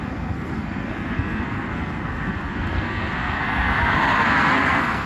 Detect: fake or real fake